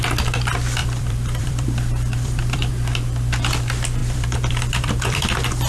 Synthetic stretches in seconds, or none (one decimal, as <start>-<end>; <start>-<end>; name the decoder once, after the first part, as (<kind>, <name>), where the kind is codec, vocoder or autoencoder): 0.8-2.7 (vocoder, BigVGAN v2); 4.0-5.7